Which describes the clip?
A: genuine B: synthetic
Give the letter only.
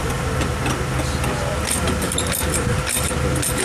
A